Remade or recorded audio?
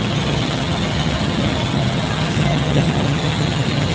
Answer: remade